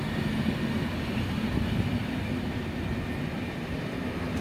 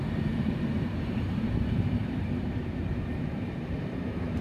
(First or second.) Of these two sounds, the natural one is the first